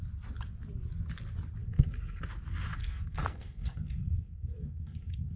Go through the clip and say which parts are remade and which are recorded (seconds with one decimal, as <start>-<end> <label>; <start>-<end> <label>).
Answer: 0.0-1.6 recorded; 1.6-2.2 remade; 2.2-2.8 recorded; 2.8-5.4 remade